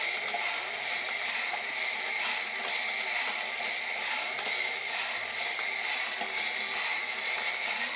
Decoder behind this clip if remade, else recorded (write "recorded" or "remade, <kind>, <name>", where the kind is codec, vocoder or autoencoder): recorded